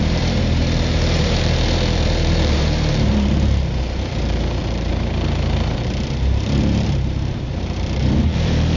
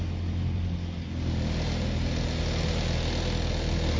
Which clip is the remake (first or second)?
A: first